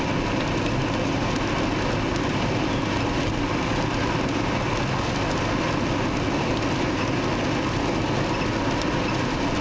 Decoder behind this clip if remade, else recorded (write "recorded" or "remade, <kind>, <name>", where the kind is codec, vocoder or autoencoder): recorded